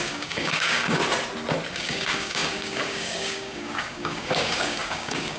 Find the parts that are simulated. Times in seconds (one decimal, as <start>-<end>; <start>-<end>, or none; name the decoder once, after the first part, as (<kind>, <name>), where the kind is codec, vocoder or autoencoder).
0.0-1.0 (codec, DAC); 1.7-5.4